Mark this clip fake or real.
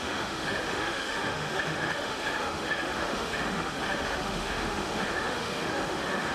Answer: fake